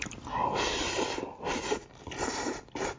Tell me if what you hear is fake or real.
real